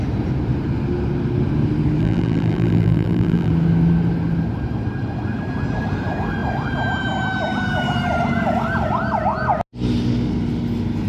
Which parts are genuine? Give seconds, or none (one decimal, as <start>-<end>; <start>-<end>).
0.0-2.0; 3.5-11.1